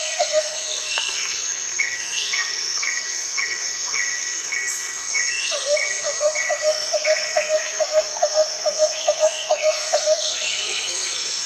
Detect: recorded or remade remade